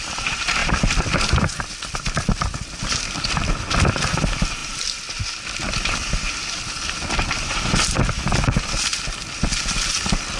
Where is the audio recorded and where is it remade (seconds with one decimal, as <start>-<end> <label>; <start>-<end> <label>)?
0.0-10.4 recorded